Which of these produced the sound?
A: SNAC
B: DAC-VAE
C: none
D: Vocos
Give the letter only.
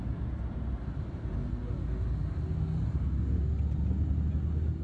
C